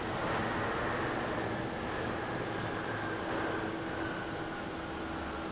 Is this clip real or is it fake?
real